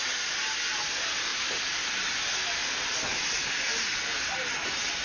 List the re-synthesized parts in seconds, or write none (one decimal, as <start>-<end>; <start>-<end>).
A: none